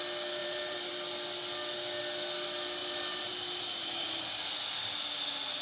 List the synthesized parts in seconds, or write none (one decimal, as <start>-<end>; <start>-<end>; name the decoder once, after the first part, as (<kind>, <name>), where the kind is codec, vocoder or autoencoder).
0.4-0.9 (vocoder, BigVGAN v2); 2.8-4.5